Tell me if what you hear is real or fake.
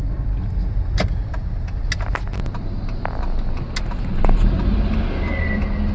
real